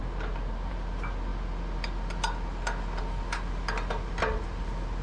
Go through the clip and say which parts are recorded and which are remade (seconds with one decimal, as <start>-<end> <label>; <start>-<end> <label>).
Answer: 0.0-5.0 recorded

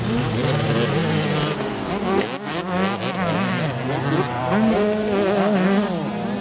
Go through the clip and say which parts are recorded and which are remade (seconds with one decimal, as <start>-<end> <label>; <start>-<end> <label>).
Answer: 0.0-6.4 recorded

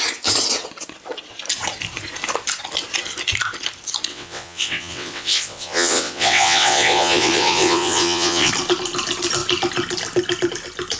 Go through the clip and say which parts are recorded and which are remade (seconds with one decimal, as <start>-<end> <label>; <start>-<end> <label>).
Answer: 0.0-4.1 recorded; 4.1-8.5 remade; 8.5-11.0 recorded

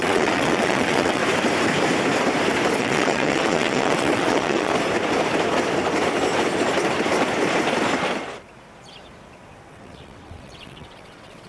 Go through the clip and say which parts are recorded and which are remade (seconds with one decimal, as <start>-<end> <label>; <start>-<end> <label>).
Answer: 0.0-1.2 remade; 1.2-2.8 recorded; 2.8-4.7 remade; 4.7-9.7 recorded; 9.7-11.5 remade

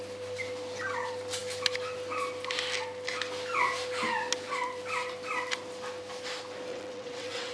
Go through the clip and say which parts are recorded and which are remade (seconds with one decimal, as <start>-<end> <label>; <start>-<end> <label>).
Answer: 0.0-6.7 recorded; 6.7-7.5 remade

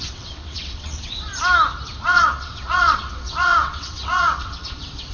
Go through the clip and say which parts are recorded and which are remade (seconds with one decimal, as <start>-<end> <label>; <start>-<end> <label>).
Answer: 0.0-1.3 remade; 1.3-2.0 recorded; 2.0-5.1 remade